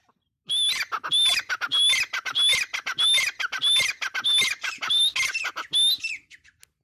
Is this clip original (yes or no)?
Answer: yes